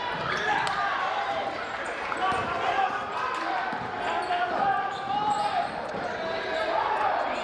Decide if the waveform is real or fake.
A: real